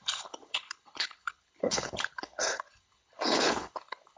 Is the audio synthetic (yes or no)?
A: yes